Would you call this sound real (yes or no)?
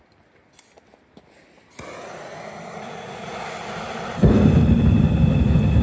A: yes